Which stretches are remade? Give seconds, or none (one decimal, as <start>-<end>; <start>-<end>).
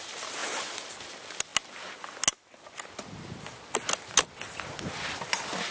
none